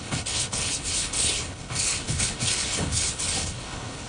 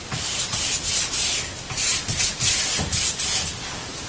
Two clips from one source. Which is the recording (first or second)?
second